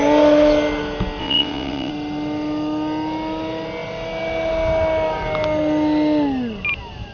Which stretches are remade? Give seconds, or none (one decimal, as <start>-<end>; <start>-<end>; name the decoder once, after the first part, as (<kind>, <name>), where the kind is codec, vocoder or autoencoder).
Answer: 1.2-1.9 (vocoder, WaveNeXt)